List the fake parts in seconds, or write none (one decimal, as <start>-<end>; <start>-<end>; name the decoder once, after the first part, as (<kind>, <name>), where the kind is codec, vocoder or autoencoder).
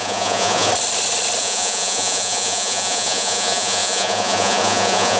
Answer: 0.0-0.7 (vocoder, Vocos); 1.4-5.2